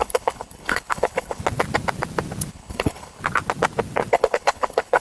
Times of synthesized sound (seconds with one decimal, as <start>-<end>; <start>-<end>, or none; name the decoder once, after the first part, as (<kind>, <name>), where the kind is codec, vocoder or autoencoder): 0.0-1.4 (codec, HILCodec); 2.5-3.2; 4.1-5.0